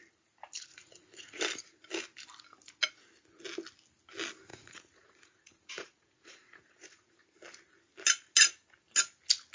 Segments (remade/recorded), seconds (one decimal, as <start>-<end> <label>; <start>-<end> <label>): 0.0-0.7 recorded; 0.7-1.4 remade; 1.4-4.5 recorded; 4.5-7.1 remade; 7.1-9.5 recorded